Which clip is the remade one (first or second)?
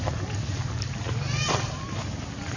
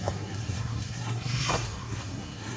second